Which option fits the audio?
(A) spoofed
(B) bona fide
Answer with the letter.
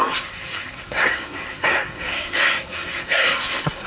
A